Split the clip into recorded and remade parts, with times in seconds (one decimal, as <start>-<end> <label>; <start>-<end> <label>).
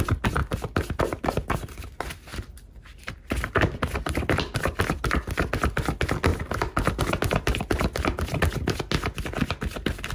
0.0-10.1 recorded